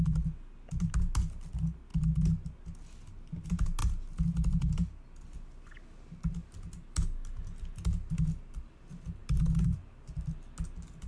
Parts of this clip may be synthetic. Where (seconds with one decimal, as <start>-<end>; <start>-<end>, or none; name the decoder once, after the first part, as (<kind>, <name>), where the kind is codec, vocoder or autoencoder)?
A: none